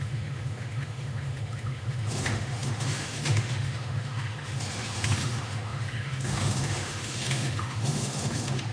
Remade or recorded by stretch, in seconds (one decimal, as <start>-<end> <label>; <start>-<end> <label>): 0.0-8.7 remade